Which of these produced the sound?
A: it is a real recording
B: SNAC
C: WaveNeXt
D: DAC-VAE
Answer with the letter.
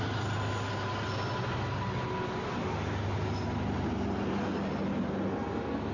A